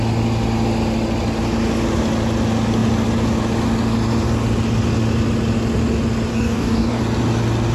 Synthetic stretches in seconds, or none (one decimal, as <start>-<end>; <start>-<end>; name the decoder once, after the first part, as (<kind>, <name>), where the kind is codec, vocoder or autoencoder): 6.3-7.0 (codec, DAC)